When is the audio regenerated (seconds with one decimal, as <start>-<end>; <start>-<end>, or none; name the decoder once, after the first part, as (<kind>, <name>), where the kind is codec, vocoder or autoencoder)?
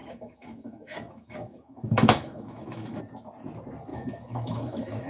0.0-3.0 (autoencoder, DAC-VAE); 3.9-5.1